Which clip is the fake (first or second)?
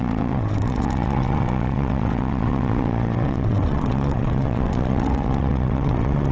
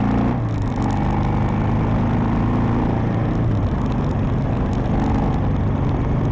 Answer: first